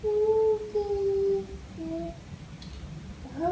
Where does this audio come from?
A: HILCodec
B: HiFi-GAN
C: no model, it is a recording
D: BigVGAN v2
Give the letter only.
C